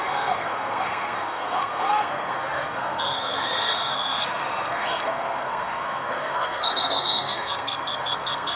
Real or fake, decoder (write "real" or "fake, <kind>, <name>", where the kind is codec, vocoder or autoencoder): fake, codec, SNAC